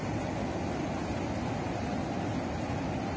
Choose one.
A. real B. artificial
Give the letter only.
A